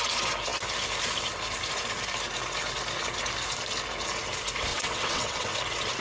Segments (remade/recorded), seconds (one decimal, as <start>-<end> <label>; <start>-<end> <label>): 0.0-4.7 recorded; 4.7-5.6 remade; 5.6-6.0 recorded